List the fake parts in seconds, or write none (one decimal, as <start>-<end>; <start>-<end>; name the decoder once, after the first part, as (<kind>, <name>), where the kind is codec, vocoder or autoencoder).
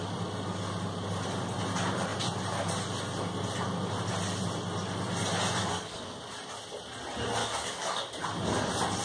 5.6-6.2 (codec, DAC); 7.4-8.1